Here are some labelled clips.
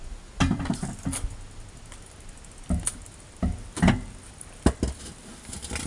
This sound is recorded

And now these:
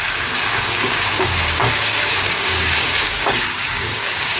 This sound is remade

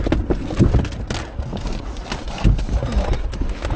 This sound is recorded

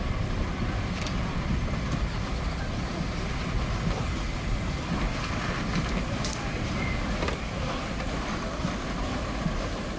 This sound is recorded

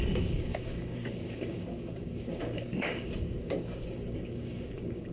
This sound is remade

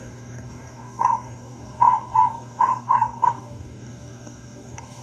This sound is remade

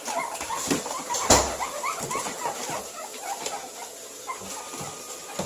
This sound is recorded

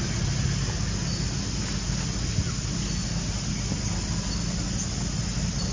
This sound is recorded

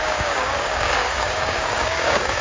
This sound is remade